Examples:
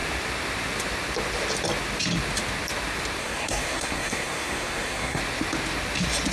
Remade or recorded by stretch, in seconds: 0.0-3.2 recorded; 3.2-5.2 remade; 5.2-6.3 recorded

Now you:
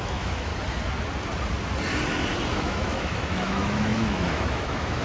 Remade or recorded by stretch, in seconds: 0.0-0.5 remade; 0.5-2.5 recorded; 2.5-5.0 remade

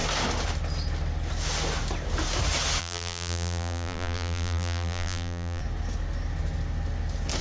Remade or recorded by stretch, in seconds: 0.0-2.8 recorded; 2.8-5.6 remade; 5.6-7.4 recorded

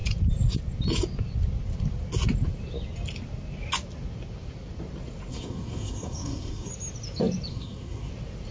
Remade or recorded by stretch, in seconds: 0.0-5.3 recorded; 5.3-6.7 remade; 6.7-7.5 recorded; 7.5-8.1 remade; 8.1-8.5 recorded

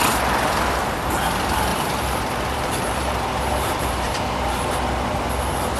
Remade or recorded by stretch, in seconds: 0.0-1.7 recorded; 1.7-4.7 remade; 4.7-5.8 recorded

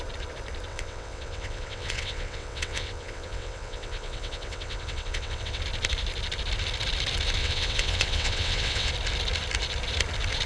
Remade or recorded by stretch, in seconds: 0.0-0.7 recorded; 0.7-5.6 remade; 5.6-7.4 recorded; 7.4-8.9 remade; 8.9-10.5 recorded

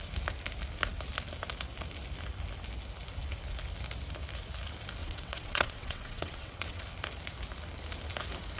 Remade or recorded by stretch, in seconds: 0.0-5.0 recorded; 5.0-6.8 remade; 6.8-8.6 recorded

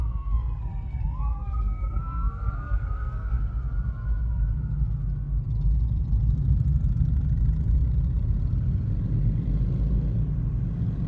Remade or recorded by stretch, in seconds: 0.0-3.4 remade; 3.4-11.1 recorded